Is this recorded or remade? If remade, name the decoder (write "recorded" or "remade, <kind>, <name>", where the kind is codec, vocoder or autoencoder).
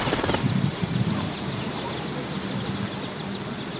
recorded